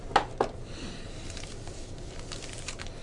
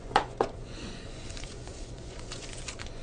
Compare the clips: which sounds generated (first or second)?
second